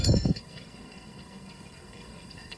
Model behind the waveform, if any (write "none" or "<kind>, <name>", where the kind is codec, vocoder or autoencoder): codec, SNAC